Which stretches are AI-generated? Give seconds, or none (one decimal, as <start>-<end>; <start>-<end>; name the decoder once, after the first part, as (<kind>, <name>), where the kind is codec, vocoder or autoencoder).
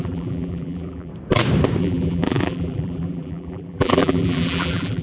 0.0-1.1 (vocoder, BigVGAN v2); 1.8-5.0